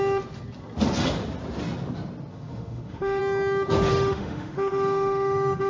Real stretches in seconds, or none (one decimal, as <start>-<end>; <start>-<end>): 0.0-2.3; 3.2-3.9